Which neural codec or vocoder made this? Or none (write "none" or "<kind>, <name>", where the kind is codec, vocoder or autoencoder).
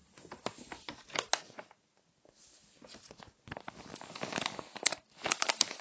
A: none